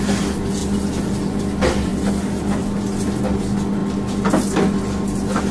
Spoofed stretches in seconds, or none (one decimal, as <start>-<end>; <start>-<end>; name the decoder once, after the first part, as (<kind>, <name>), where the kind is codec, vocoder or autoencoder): none